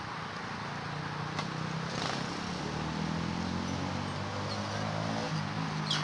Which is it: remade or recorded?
recorded